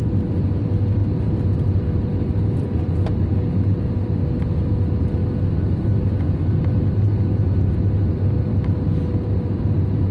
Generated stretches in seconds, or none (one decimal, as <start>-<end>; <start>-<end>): none